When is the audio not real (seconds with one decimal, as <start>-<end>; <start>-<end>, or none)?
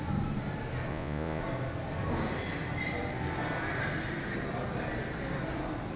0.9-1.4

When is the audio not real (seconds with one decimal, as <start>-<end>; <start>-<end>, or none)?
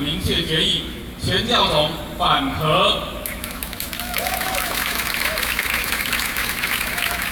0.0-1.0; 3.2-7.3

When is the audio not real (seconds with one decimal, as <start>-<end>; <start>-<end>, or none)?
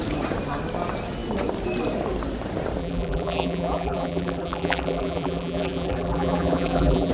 2.8-7.1